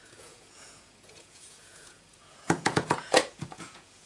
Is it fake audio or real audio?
fake